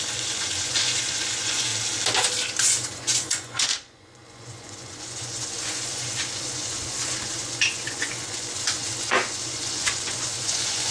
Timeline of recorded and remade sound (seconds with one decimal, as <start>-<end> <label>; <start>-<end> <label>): 0.0-1.7 remade; 1.7-2.6 recorded; 2.6-10.9 remade